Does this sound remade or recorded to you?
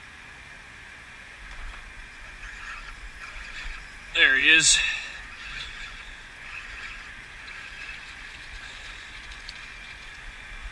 remade